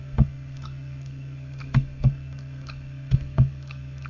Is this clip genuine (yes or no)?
no